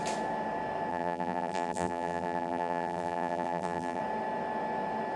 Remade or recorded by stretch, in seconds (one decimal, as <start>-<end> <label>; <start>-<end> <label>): 0.0-0.9 recorded; 0.9-4.0 remade; 4.0-5.2 recorded